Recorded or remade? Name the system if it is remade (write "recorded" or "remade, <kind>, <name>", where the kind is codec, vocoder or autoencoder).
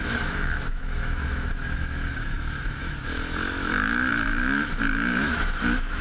remade, autoencoder, DAC-VAE